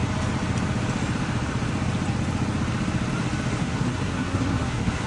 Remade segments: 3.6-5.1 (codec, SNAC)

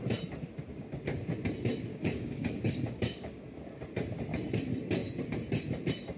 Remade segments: 1.9-3.4 (codec, DAC)